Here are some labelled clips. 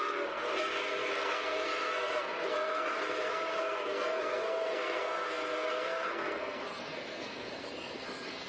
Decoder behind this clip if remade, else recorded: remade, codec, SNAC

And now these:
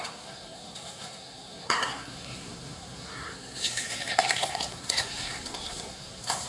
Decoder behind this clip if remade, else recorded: remade, codec, SNAC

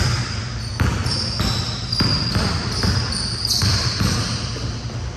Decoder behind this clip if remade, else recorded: recorded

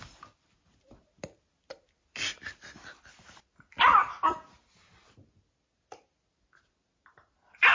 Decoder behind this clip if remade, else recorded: recorded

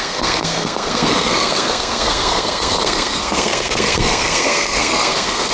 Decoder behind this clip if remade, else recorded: remade, codec, SNAC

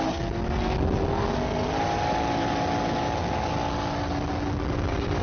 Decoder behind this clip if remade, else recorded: recorded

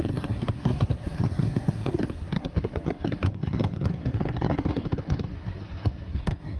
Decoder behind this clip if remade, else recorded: remade, codec, SNAC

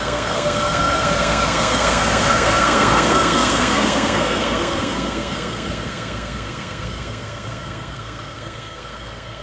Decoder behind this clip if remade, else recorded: remade, codec, SNAC